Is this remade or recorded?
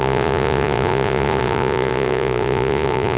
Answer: remade